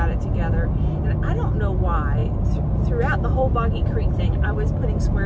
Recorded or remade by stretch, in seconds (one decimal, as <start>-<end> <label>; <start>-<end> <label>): 0.0-5.3 recorded